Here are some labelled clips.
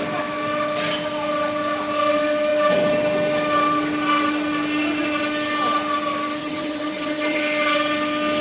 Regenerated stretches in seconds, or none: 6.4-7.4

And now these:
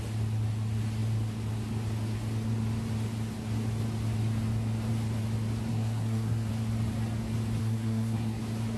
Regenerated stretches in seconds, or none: 5.7-6.5; 7.6-8.4

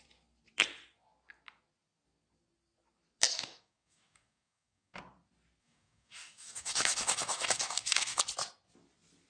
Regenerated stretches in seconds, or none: 3.3-5.0; 5.6-8.2

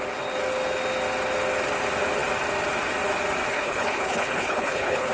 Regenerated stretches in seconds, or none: 3.5-5.1

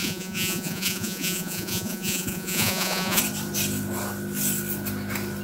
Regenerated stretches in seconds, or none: 0.0-3.2